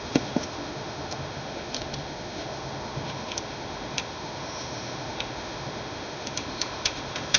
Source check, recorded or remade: remade